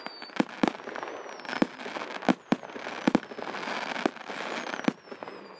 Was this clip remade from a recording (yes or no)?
no